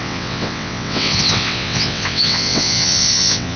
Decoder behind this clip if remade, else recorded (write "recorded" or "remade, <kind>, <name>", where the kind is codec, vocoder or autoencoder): remade, vocoder, WaveNeXt